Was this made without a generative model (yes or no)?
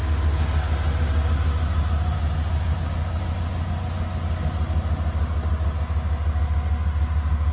yes